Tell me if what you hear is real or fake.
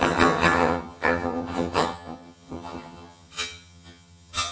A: fake